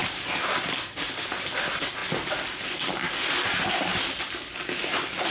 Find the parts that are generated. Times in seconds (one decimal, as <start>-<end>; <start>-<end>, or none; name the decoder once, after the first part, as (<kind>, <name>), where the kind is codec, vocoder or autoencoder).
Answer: 0.0-1.2 (vocoder, BigVGAN v2)